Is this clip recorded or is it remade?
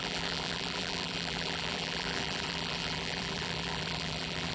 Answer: remade